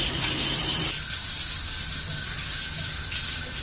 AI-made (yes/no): no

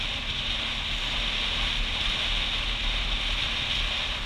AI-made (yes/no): no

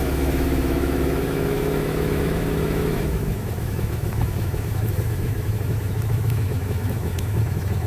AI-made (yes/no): yes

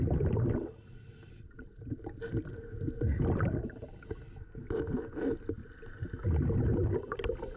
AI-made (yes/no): no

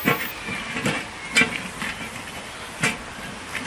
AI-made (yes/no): no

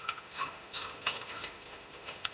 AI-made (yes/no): yes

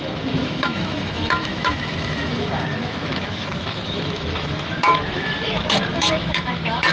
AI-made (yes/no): yes